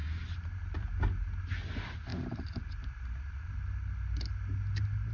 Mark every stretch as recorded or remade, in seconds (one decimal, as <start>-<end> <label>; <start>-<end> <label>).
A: 0.0-0.9 remade; 0.9-2.1 recorded; 2.1-3.5 remade; 3.5-5.1 recorded